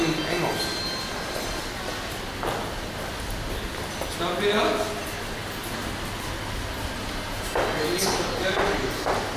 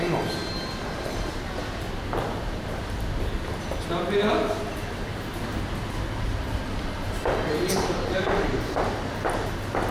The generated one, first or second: second